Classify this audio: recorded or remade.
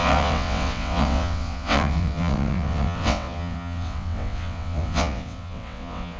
remade